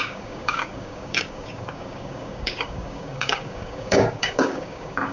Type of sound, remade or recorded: remade